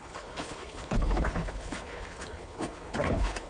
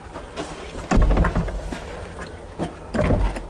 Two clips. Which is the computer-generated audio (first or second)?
first